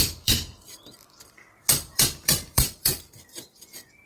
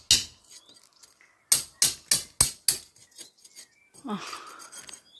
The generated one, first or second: first